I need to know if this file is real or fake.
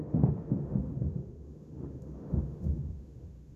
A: fake